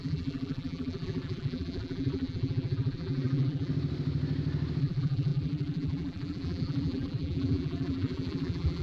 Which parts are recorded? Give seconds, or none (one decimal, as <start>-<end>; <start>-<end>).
3.7-4.8